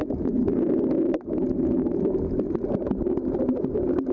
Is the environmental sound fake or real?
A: real